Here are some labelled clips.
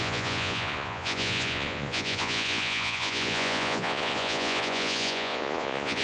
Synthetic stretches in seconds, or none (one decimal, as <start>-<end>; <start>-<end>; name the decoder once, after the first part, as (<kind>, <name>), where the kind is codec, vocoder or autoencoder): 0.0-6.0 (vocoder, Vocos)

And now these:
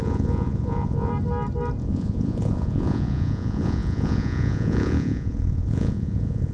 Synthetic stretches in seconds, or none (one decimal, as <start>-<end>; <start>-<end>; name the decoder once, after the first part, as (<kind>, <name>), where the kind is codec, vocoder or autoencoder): 0.0-1.1 (vocoder, Vocos); 1.8-6.5

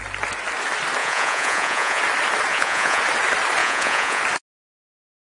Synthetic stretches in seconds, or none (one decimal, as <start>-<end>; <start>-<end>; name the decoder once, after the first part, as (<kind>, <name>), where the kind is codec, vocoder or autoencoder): 1.0-2.0 (vocoder, Vocos); 2.5-3.0; 3.6-4.2